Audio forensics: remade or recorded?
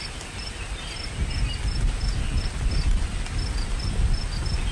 recorded